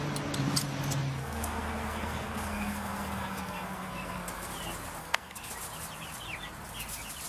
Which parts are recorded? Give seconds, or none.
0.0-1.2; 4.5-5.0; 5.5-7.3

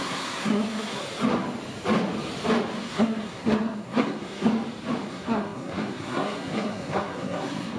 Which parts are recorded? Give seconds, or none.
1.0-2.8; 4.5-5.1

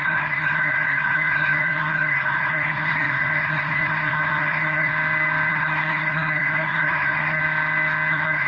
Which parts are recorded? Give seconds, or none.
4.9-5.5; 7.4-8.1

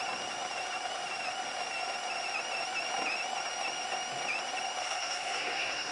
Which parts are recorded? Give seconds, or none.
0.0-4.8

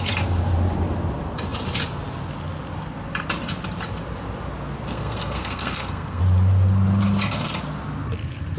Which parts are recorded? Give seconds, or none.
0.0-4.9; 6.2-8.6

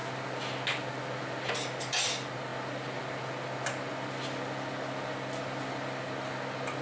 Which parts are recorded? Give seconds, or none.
0.0-6.8